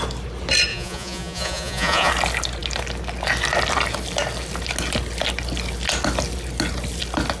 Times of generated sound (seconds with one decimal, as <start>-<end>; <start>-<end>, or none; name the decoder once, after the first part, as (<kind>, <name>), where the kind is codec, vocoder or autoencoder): 0.7-2.1 (vocoder, Vocos)